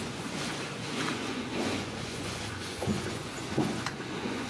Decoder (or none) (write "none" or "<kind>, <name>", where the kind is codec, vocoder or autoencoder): vocoder, Vocos